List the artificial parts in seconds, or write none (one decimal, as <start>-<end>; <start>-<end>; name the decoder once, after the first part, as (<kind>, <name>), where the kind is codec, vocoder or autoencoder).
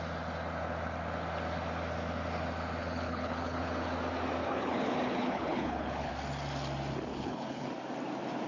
2.8-3.7 (codec, HILCodec); 4.4-6.1; 7.1-7.7